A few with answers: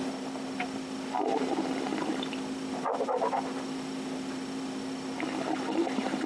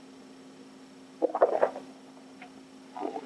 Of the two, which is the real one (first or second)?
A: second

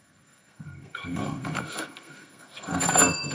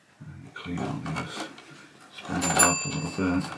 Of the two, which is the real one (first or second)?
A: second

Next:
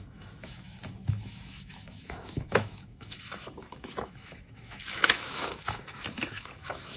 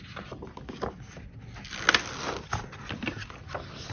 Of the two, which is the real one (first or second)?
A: second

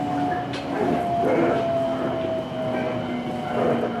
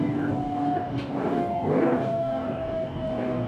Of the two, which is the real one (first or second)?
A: first